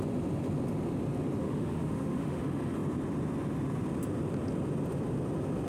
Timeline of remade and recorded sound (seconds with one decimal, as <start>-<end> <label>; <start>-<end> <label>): 0.0-1.4 recorded; 1.4-2.4 remade; 2.4-5.7 recorded